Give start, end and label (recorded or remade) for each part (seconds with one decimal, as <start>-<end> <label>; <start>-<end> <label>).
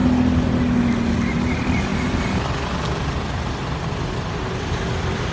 0.0-5.3 recorded